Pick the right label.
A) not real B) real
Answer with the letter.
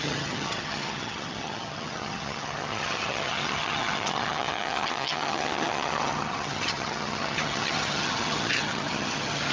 A